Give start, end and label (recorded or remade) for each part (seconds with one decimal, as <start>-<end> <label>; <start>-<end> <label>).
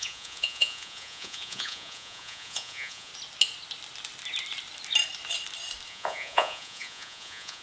0.0-3.1 remade; 3.1-5.9 recorded; 5.9-7.6 remade